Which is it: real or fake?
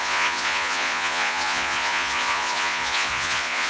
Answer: fake